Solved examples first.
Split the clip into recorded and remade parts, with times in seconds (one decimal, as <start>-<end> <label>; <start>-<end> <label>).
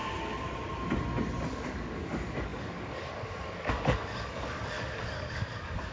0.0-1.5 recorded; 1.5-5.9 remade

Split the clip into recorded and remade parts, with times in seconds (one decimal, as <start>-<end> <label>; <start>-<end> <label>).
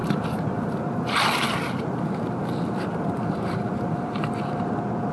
0.0-5.1 recorded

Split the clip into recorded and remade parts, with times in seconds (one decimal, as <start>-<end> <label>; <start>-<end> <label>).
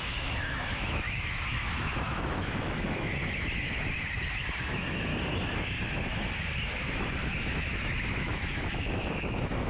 0.0-3.2 remade; 3.2-4.6 recorded; 4.6-5.1 remade; 5.1-8.1 recorded; 8.1-9.7 remade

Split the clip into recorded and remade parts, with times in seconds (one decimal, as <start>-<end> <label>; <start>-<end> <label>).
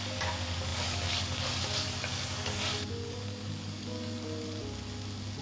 0.0-4.6 remade; 4.6-5.4 recorded